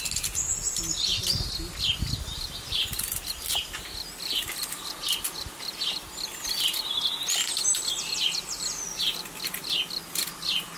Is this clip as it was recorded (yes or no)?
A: yes